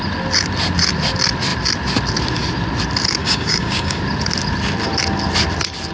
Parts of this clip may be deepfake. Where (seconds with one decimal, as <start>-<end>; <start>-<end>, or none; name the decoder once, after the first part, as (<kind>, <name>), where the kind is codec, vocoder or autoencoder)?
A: 3.2-4.0 (codec, DAC)